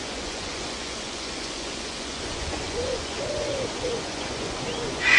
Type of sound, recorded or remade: remade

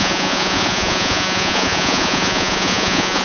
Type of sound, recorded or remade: remade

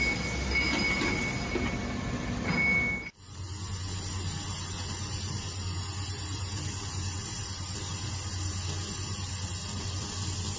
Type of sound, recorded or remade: recorded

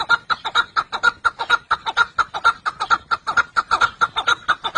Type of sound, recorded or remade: remade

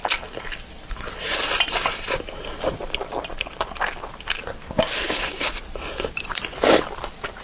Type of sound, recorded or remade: recorded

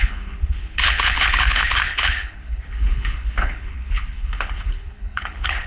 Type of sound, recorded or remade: remade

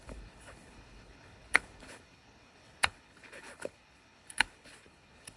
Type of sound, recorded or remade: remade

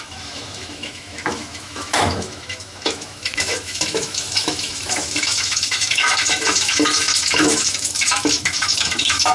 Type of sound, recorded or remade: remade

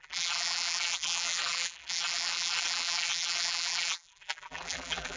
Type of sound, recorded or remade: remade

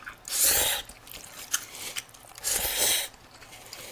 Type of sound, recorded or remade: recorded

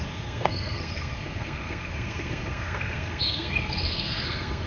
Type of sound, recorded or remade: remade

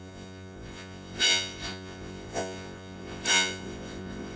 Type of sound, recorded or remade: remade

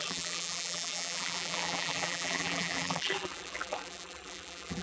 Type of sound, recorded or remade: remade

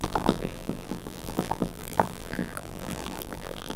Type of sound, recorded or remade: remade